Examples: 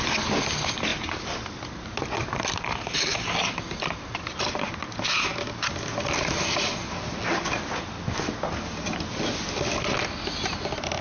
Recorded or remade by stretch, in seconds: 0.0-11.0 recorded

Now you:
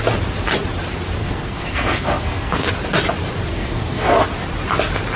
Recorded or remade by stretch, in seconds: 0.0-1.2 recorded; 1.2-2.7 remade; 2.7-3.5 recorded; 3.5-4.2 remade; 4.2-5.2 recorded

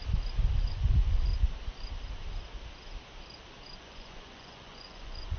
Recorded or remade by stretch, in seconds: 0.0-0.6 recorded; 0.6-1.3 remade; 1.3-3.8 recorded; 3.8-5.4 remade

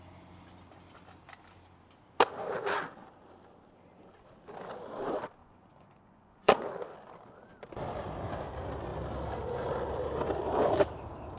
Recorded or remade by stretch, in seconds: 0.0-5.4 recorded; 5.4-6.7 remade; 6.7-11.4 recorded

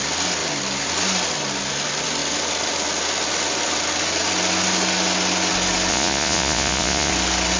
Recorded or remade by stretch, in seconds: 0.0-5.9 recorded; 5.9-7.1 remade; 7.1-7.6 recorded

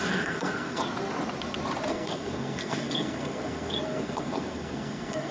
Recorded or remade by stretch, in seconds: 0.0-0.8 remade; 0.8-1.9 recorded; 1.9-5.3 remade